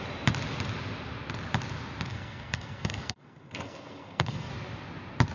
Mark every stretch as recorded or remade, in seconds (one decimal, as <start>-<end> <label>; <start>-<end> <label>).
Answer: 0.0-2.1 recorded; 2.1-4.5 remade; 4.5-5.3 recorded

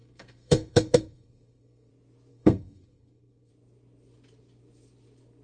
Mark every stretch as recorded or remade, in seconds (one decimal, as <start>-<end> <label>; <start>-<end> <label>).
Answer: 0.0-1.9 remade; 1.9-2.3 recorded; 2.3-3.5 remade; 3.5-5.4 recorded

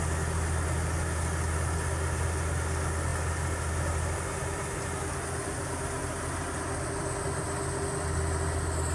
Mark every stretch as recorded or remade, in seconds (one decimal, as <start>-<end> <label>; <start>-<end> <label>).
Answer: 0.0-8.9 recorded

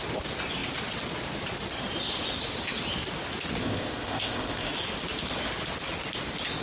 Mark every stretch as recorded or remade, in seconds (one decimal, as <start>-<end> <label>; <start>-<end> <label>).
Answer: 0.0-3.6 recorded; 3.6-4.7 remade; 4.7-6.6 recorded

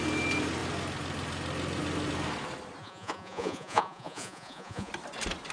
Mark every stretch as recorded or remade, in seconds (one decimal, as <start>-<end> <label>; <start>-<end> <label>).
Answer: 0.0-2.8 recorded; 2.8-4.9 remade; 4.9-5.5 recorded

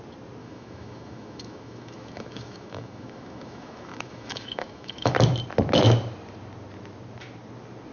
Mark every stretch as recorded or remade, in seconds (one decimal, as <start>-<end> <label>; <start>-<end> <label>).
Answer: 0.0-0.4 recorded; 0.4-5.1 remade; 5.1-7.9 recorded

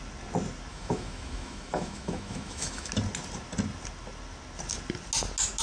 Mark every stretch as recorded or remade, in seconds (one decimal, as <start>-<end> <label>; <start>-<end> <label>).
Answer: 0.0-0.7 recorded; 0.7-2.9 remade; 2.9-5.6 recorded